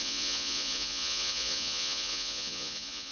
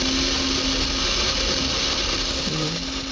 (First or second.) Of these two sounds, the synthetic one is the first